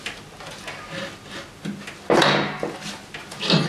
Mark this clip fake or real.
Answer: real